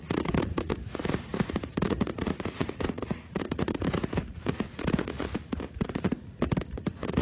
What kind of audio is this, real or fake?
fake